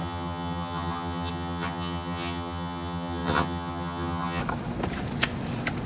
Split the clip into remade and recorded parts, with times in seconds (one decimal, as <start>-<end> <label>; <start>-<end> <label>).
0.0-4.4 remade; 4.4-5.9 recorded